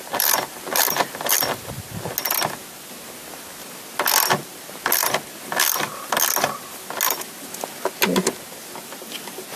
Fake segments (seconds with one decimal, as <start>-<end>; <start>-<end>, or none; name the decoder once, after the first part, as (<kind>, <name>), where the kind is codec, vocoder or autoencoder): none